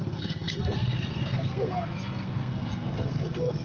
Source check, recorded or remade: remade